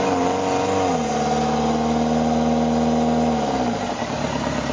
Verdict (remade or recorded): recorded